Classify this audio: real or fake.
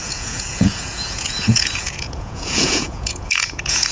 fake